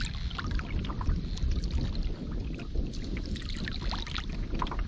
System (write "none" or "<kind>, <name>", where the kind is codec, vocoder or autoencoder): none